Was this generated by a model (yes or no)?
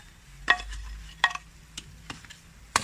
yes